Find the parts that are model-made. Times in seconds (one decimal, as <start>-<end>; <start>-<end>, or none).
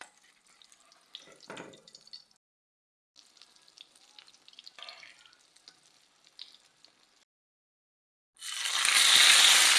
none